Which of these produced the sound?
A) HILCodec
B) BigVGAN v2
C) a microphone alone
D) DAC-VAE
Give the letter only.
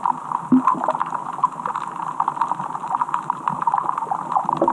C